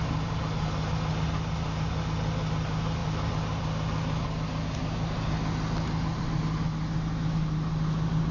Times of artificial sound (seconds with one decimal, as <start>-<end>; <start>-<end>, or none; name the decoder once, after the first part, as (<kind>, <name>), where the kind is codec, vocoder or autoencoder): none